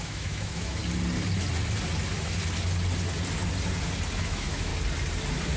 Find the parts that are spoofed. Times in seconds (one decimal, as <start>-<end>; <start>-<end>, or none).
0.0-0.8; 4.2-4.7